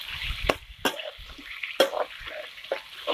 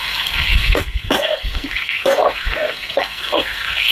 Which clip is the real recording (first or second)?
first